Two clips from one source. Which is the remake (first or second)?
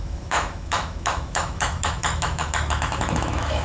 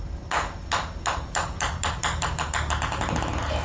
first